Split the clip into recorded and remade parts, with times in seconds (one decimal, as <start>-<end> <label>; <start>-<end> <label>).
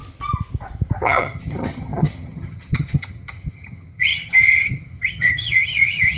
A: 0.0-1.0 recorded; 1.0-6.2 remade